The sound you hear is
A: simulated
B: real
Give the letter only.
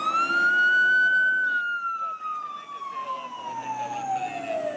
B